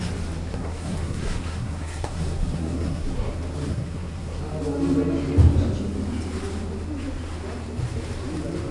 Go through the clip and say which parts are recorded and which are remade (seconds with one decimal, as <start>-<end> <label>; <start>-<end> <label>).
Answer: 0.0-0.5 recorded; 0.5-3.3 remade; 3.3-3.7 recorded; 3.7-4.4 remade; 4.4-8.7 recorded